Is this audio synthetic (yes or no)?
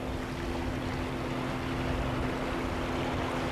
no